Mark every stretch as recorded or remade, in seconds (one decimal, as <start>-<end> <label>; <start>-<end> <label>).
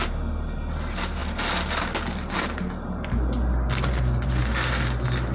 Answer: 0.0-5.3 recorded